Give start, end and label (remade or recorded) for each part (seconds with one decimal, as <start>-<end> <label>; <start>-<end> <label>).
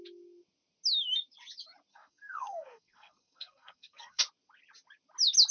0.0-1.9 recorded; 1.9-4.2 remade; 4.2-5.5 recorded